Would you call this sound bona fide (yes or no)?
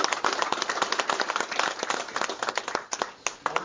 yes